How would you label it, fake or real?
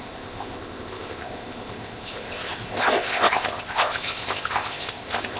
fake